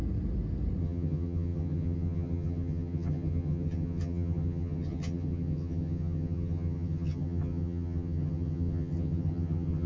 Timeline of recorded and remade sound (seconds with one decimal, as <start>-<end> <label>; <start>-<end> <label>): 0.0-0.8 recorded; 0.8-9.9 remade

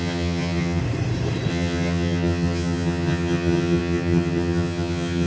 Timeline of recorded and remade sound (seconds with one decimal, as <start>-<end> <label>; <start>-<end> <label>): 0.0-0.8 remade; 0.8-1.5 recorded; 1.5-5.3 remade